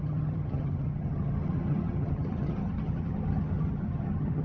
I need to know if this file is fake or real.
fake